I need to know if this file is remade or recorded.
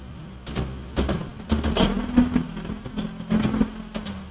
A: recorded